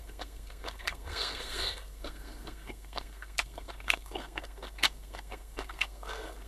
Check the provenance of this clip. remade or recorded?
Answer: remade